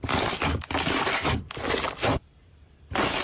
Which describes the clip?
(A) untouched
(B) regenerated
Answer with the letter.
A